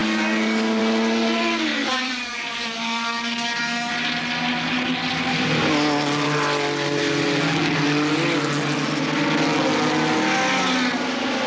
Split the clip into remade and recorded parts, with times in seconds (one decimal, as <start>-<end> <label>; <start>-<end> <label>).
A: 0.0-0.8 remade; 0.8-1.7 recorded; 1.7-3.9 remade; 3.9-11.5 recorded